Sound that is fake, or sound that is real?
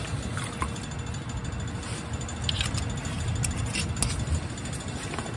real